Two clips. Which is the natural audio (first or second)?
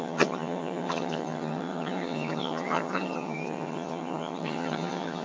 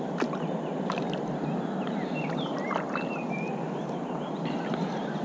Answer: second